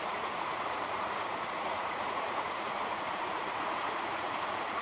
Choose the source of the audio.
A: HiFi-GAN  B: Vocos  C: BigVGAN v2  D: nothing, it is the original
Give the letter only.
B